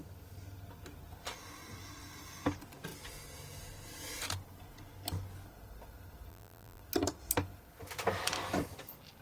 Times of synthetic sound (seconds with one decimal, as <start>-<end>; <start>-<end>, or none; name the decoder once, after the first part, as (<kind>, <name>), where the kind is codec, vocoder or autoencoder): 6.3-6.8 (vocoder, BigVGAN v2)

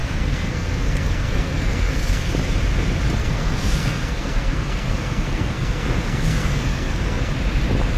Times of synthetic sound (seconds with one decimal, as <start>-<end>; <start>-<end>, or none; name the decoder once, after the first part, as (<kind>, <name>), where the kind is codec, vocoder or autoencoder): 0.0-2.3 (codec, SNAC); 3.2-7.3

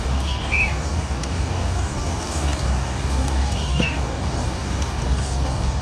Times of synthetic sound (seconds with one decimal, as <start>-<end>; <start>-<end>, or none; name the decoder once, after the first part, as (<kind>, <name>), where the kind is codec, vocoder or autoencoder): 0.0-5.8 (codec, DAC)

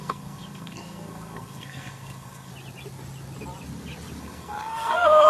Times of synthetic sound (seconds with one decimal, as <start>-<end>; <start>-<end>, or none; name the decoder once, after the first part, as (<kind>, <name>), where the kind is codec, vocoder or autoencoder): 0.0-2.5 (codec, SNAC); 4.2-5.3